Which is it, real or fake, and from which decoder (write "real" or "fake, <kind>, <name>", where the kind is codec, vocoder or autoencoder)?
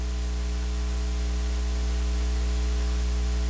real